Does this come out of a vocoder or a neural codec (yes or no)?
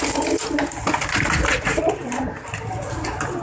no